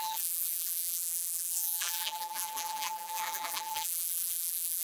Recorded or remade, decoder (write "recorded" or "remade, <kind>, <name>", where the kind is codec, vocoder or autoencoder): remade, vocoder, BigVGAN v2